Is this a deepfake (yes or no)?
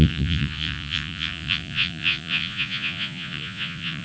yes